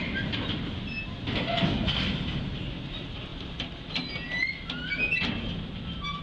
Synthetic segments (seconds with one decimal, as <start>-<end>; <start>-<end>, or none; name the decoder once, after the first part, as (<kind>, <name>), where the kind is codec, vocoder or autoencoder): none

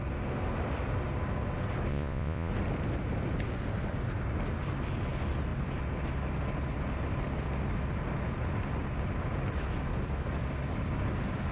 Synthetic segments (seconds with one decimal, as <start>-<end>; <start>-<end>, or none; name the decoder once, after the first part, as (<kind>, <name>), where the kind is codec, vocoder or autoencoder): 1.9-2.5 (vocoder, Vocos)